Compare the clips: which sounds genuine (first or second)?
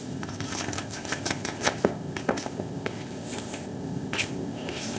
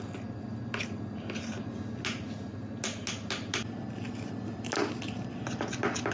second